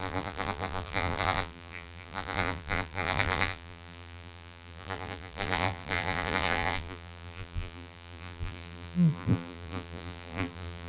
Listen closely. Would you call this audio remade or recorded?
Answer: remade